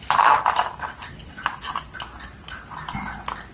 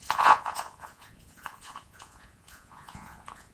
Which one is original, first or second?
first